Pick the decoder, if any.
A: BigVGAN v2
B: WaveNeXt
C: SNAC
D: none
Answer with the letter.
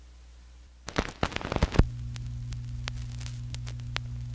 D